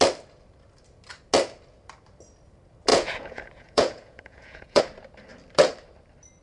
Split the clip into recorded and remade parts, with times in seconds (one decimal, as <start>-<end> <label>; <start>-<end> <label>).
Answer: 0.0-2.9 recorded; 2.9-4.8 remade; 4.8-6.4 recorded